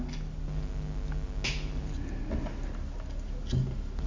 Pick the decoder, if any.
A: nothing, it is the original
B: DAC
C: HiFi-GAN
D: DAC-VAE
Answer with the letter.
A